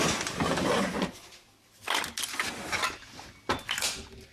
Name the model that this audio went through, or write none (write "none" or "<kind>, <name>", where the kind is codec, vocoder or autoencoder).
none